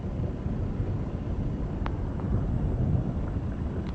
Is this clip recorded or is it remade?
recorded